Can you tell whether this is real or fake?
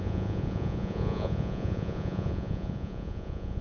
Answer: fake